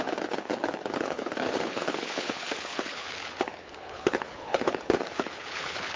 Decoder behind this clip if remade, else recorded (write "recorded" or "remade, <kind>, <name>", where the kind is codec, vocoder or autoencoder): remade, codec, HILCodec